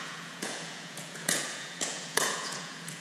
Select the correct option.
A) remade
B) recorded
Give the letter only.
A